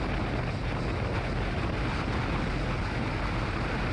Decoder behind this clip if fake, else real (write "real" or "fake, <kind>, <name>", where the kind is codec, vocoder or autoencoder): real